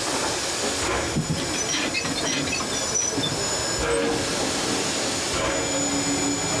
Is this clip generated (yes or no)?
no